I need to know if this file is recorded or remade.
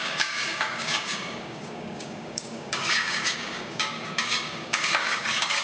remade